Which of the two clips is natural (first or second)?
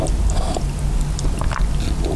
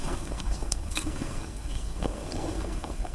first